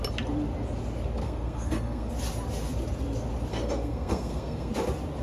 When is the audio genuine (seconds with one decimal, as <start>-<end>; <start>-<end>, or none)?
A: 0.0-1.2; 2.1-3.5; 4.7-5.2